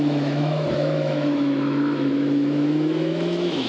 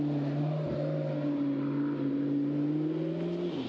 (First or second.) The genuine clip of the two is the second